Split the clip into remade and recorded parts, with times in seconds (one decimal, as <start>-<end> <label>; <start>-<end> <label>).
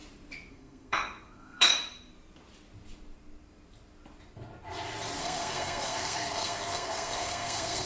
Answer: 0.0-0.5 recorded; 0.5-1.7 remade; 1.7-5.2 recorded; 5.2-7.9 remade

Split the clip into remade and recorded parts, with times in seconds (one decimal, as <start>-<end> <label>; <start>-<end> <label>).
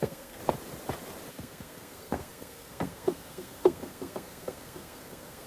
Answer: 0.0-0.4 remade; 0.4-1.3 recorded; 1.3-5.5 remade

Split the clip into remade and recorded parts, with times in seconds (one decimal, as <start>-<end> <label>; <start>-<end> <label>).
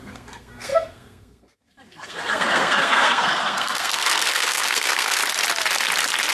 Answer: 0.0-5.2 remade; 5.2-6.3 recorded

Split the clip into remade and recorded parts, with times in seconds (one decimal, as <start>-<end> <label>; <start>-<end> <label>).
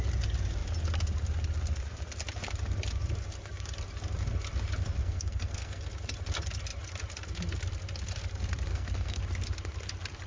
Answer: 0.0-5.0 recorded; 5.0-5.8 remade; 5.8-8.7 recorded; 8.7-9.2 remade; 9.2-10.3 recorded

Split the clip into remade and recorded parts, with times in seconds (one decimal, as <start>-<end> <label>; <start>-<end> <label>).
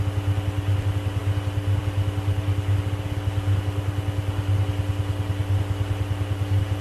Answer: 0.0-6.8 recorded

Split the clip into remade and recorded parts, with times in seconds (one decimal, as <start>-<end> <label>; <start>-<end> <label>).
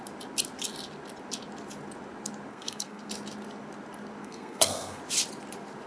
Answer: 0.0-2.5 recorded; 2.5-3.1 remade; 3.1-4.2 recorded; 4.2-5.0 remade; 5.0-5.9 recorded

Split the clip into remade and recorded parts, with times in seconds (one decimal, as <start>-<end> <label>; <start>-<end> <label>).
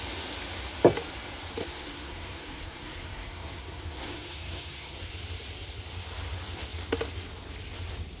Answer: 0.0-1.6 recorded; 1.6-5.1 remade; 5.1-8.2 recorded